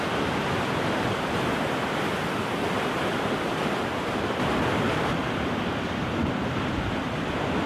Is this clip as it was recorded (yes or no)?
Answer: no